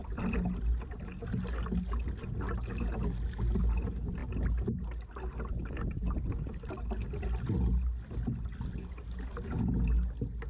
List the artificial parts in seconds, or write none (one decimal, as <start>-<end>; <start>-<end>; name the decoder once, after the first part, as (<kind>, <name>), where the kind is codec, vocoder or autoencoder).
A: none